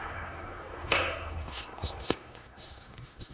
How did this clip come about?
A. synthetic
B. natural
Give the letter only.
A